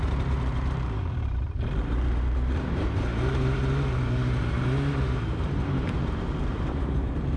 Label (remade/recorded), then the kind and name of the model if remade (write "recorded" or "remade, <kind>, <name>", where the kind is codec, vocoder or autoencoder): remade, vocoder, BigVGAN v2